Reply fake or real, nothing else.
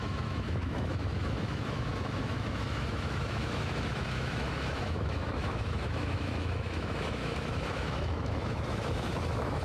fake